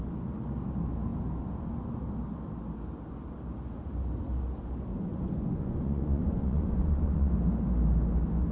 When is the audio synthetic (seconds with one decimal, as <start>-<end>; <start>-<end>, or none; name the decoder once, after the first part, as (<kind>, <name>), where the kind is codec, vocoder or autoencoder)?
4.9-7.3 (vocoder, Vocos)